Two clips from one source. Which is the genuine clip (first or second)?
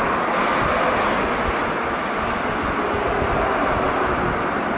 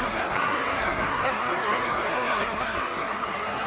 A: first